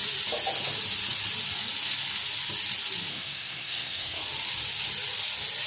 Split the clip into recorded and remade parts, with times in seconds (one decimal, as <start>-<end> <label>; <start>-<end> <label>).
0.0-3.1 recorded; 3.1-4.2 remade; 4.2-5.7 recorded